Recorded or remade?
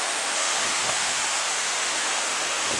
remade